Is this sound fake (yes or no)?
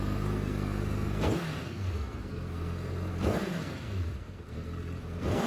yes